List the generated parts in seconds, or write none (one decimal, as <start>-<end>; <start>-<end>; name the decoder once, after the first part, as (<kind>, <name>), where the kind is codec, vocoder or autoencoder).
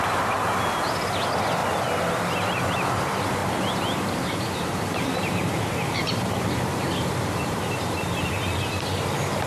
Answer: 3.4-8.7 (vocoder, BigVGAN v2)